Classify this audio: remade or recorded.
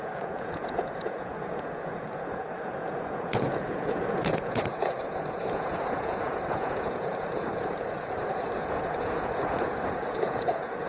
remade